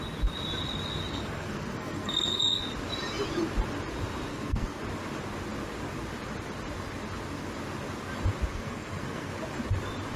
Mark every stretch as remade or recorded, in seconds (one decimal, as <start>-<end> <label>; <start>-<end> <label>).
0.0-1.1 recorded; 1.1-2.6 remade; 2.6-4.3 recorded; 4.3-4.8 remade; 4.8-8.5 recorded; 8.5-9.3 remade; 9.3-10.2 recorded